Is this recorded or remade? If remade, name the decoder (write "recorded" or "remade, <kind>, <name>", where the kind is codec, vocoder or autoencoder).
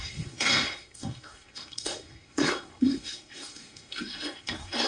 remade, codec, SNAC